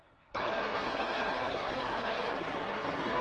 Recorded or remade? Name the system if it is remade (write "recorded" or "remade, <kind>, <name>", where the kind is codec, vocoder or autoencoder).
remade, codec, SNAC